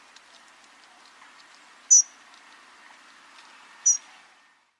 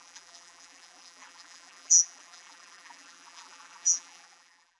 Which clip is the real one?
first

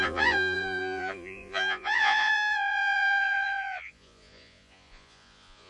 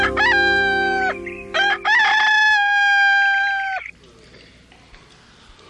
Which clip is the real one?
second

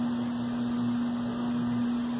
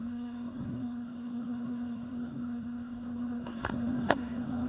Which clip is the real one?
first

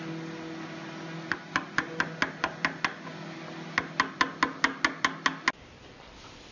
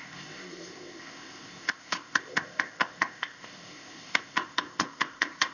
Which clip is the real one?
first